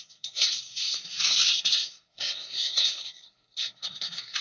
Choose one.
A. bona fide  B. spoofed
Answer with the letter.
B